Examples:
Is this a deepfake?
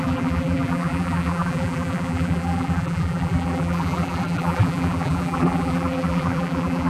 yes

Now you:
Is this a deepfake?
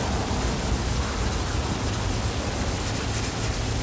no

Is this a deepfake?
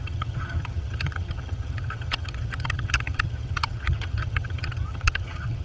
yes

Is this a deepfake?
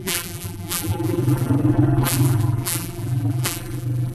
yes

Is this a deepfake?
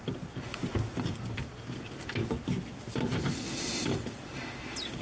no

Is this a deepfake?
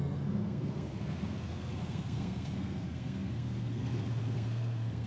yes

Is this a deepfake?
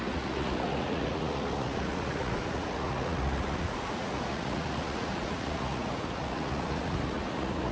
yes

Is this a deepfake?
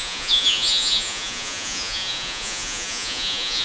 yes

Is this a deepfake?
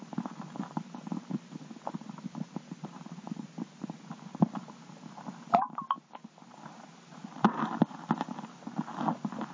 no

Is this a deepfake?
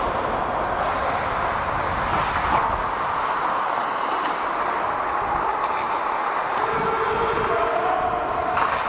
no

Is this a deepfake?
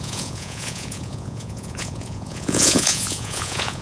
yes